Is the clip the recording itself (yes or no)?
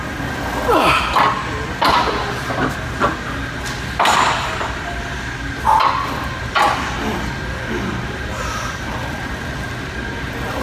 yes